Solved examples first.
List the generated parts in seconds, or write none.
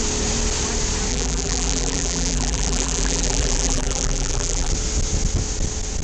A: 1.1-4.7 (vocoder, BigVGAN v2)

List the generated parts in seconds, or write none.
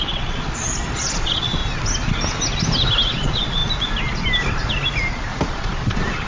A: 0.0-1.6 (vocoder, Vocos); 3.1-3.6; 5.5-6.3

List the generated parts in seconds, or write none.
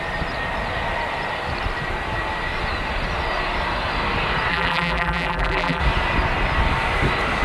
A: 4.5-5.8 (vocoder, BigVGAN v2)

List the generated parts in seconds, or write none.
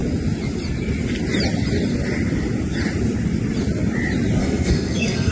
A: 4.4-5.3 (codec, SNAC)